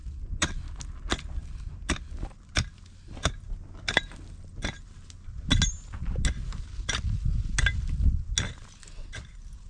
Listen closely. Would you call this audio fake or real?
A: real